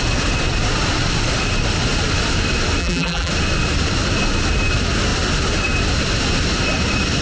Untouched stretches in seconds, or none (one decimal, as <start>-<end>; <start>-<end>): 0.0-2.8; 3.3-7.2